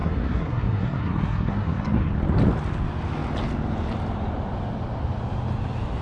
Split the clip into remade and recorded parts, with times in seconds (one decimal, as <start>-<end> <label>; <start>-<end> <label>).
0.0-2.1 remade; 2.1-6.0 recorded